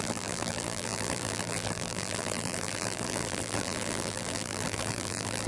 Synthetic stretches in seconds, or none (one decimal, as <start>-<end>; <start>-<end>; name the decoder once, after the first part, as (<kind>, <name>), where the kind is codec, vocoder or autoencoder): 0.0-5.5 (vocoder, BigVGAN v2)